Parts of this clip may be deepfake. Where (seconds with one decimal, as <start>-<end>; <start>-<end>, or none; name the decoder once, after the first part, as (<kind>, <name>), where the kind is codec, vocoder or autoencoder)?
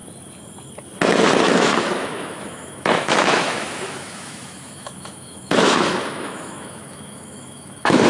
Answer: 1.4-8.1 (autoencoder, DAC-VAE)